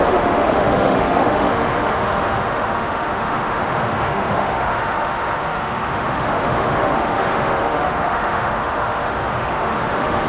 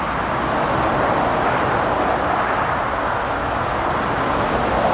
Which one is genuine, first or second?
second